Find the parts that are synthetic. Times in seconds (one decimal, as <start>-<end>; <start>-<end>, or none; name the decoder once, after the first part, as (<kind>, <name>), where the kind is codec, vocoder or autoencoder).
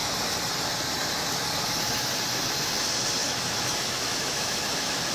3.2-5.1 (autoencoder, DAC-VAE)